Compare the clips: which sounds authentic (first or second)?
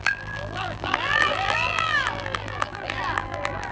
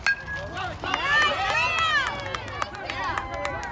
second